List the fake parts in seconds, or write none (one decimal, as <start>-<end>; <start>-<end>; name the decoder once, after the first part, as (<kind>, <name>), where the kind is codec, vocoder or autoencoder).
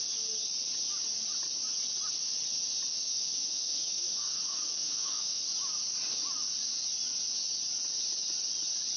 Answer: 2.9-5.4 (autoencoder, DAC-VAE)